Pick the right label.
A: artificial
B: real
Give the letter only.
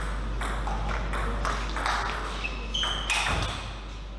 B